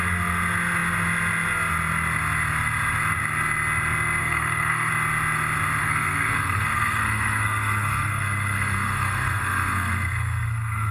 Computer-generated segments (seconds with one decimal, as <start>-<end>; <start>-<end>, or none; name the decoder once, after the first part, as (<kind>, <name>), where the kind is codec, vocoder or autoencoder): 4.2-4.9 (codec, SNAC); 5.8-10.9